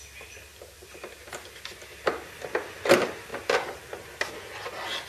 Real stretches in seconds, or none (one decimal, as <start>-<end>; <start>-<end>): 0.0-3.3; 4.3-5.1